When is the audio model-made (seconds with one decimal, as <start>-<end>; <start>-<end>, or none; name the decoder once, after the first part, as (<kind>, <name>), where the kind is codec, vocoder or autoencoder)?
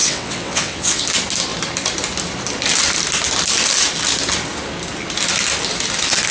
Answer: 0.0-1.0 (vocoder, WaveNeXt)